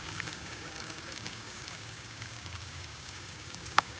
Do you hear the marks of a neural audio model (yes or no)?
yes